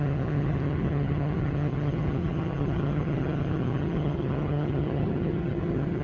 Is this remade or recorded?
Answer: remade